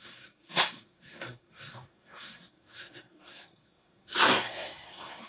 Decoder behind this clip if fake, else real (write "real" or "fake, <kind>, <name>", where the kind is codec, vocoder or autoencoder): fake, codec, SNAC